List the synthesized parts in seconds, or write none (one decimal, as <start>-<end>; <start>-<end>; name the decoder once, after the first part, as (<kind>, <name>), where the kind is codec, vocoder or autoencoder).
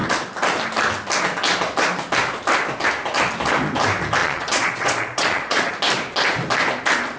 4.2-5.7 (vocoder, Vocos)